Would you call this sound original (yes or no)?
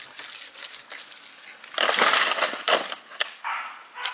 yes